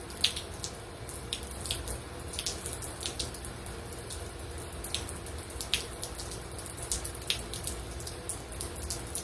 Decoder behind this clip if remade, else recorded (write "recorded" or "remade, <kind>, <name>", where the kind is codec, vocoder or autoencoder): recorded